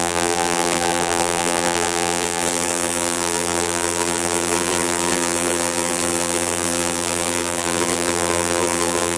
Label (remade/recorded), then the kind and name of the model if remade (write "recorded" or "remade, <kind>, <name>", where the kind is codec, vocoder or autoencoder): remade, vocoder, BigVGAN v2